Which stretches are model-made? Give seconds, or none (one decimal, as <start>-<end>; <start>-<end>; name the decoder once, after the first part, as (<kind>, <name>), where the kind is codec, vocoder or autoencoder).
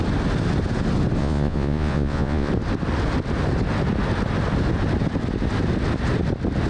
1.2-2.5 (vocoder, Vocos)